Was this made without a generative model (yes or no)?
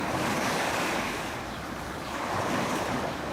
no